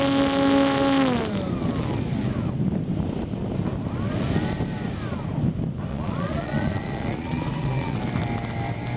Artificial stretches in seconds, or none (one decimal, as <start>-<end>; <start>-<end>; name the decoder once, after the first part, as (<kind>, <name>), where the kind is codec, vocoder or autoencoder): 5.9-8.0 (vocoder, Vocos)